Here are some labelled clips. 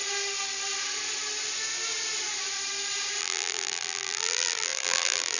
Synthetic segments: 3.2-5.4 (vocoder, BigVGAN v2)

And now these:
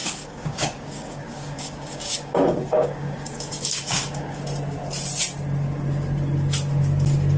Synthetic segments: 0.0-4.4 (codec, DAC)